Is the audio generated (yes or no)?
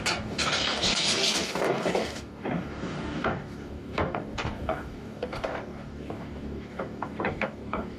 yes